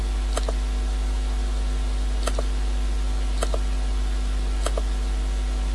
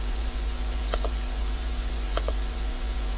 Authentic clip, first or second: first